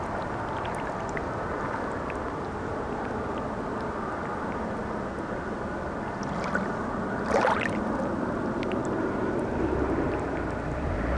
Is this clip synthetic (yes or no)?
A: no